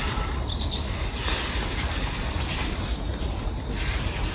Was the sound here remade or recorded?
remade